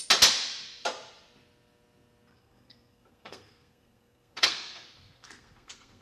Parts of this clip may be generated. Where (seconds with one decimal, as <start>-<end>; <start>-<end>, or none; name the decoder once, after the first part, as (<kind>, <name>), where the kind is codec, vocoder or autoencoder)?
2.3-6.0 (codec, SNAC)